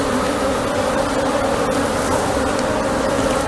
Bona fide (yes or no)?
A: yes